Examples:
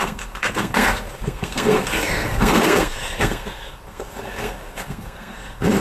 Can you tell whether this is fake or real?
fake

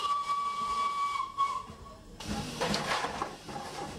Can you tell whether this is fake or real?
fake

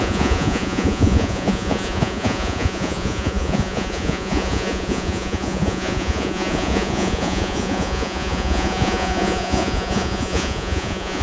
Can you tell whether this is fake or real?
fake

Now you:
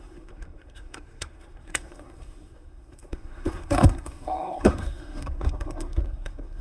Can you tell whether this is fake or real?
fake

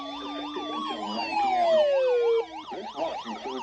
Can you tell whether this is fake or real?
real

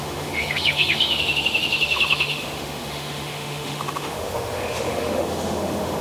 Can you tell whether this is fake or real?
fake